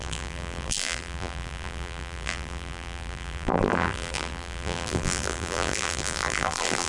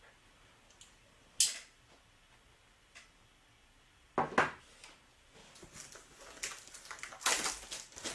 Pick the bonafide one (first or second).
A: second